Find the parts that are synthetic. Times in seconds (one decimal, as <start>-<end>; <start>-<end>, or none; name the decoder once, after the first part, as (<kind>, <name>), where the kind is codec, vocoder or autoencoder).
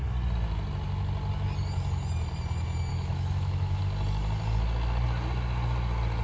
2.9-3.8 (autoencoder, DAC-VAE)